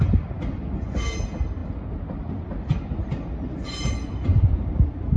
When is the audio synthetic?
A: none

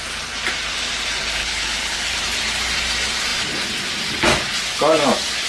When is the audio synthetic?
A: 1.4-2.1 (codec, HILCodec)

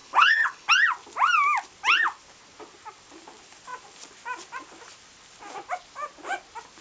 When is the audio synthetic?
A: 0.0-0.7 (codec, HILCodec)

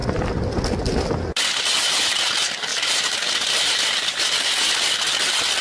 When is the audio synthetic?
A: none

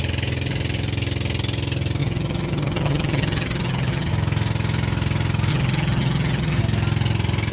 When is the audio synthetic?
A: 2.0-4.1 (vocoder, HiFi-GAN); 5.5-6.6

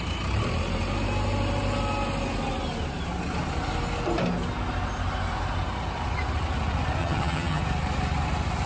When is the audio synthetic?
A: 7.0-7.6 (vocoder, HiFi-GAN)